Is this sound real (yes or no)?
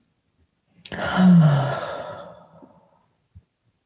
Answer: yes